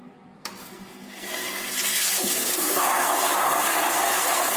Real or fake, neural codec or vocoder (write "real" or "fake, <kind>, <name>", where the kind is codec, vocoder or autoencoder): fake, codec, SNAC